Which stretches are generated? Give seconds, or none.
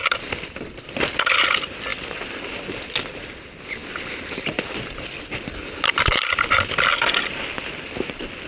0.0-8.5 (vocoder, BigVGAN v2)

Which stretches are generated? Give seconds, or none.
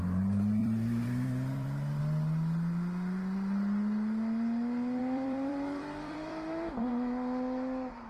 0.6-2.0 (vocoder, BigVGAN v2); 5.0-6.9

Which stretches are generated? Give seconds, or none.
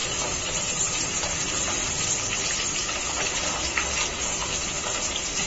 0.0-1.4 (vocoder, BigVGAN v2)